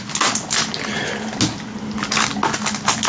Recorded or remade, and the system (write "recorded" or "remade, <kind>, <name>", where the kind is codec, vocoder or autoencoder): recorded